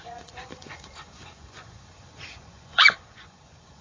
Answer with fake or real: fake